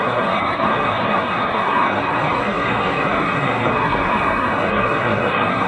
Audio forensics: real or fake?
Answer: fake